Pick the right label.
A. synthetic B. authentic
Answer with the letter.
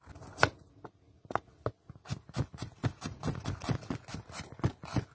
B